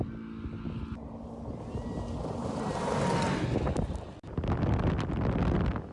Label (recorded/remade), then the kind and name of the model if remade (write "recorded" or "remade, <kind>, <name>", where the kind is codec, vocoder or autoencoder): recorded